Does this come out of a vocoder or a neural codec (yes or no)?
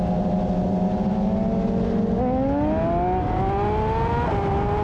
no